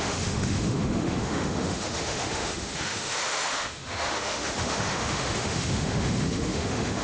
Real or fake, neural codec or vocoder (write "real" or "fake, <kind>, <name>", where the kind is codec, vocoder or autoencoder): fake, autoencoder, DAC-VAE